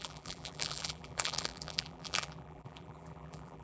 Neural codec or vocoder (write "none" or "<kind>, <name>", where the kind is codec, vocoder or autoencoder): vocoder, BigVGAN v2